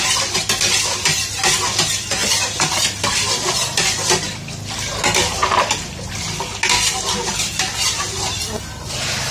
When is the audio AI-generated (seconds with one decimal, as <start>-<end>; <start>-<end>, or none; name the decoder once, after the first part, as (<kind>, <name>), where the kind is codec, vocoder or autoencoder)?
none